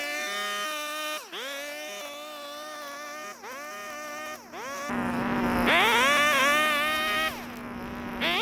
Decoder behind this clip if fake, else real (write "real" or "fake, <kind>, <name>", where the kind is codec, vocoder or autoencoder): real